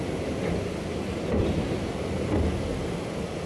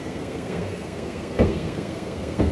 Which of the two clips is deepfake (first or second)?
second